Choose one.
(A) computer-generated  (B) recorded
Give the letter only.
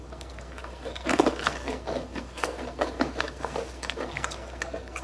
A